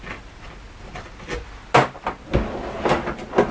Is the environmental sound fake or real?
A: real